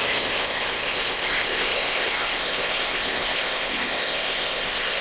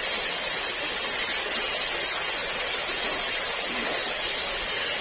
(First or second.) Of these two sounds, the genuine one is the second